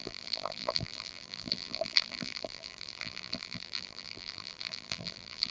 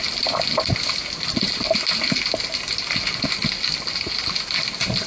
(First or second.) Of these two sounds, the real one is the second